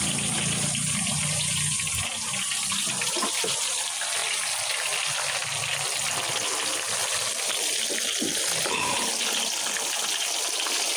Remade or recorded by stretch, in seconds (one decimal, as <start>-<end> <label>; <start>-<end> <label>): 0.0-7.0 recorded; 7.0-7.5 remade; 7.5-11.0 recorded